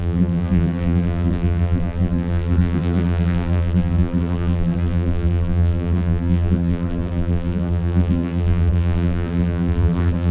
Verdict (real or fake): fake